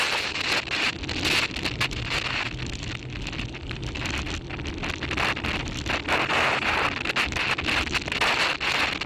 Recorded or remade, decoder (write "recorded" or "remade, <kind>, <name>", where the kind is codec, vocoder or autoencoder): recorded